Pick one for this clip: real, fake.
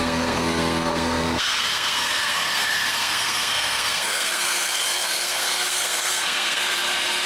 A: fake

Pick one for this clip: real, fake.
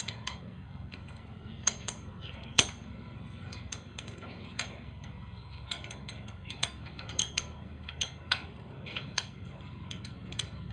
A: fake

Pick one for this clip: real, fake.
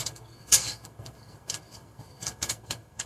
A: fake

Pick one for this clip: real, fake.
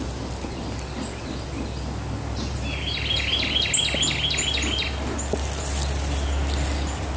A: real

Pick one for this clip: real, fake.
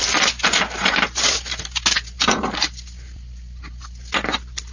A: real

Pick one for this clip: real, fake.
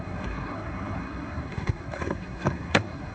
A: fake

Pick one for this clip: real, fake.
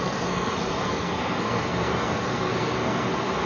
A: fake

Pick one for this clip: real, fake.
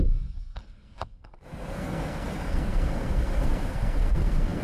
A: fake